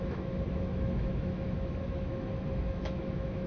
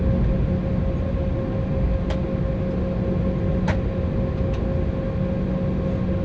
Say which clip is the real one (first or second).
second